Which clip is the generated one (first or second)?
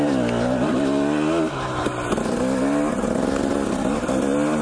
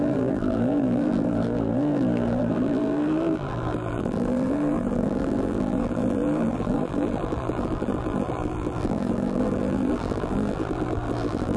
second